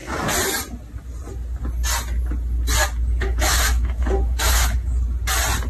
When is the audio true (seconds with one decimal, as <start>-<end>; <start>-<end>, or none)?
0.0-3.2; 4.9-5.7